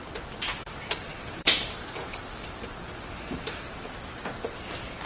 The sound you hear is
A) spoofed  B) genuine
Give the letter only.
A